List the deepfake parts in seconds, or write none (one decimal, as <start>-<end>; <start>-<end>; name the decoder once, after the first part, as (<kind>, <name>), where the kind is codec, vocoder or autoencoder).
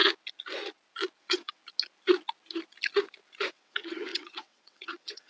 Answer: 1.2-1.6 (vocoder, WaveNeXt); 3.5-5.3